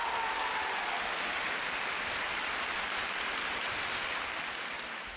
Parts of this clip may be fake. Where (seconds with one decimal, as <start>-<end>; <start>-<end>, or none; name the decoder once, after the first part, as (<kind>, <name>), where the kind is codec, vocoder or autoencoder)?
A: 0.0-0.6 (vocoder, BigVGAN v2); 1.3-4.4